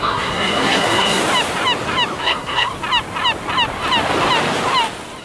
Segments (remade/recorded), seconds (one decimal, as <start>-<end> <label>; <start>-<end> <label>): 0.0-1.2 remade; 1.2-2.2 recorded; 2.2-2.7 remade; 2.7-5.2 recorded